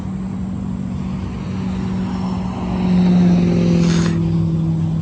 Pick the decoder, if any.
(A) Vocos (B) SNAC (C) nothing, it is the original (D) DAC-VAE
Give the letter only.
C